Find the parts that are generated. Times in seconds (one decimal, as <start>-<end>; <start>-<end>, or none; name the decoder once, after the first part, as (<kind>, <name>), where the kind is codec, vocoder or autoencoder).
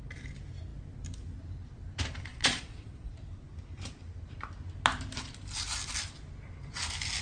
2.3-3.1 (vocoder, Vocos)